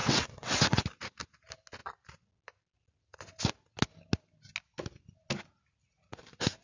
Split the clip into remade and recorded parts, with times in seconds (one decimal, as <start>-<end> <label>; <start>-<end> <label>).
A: 0.0-0.8 remade; 0.8-6.6 recorded